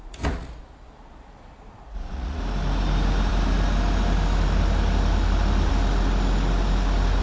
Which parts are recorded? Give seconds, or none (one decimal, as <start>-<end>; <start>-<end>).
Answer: 0.6-1.9; 2.4-7.2

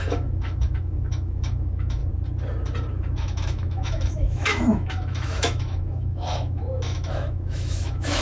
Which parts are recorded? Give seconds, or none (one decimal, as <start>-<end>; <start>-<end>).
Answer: 2.0-2.9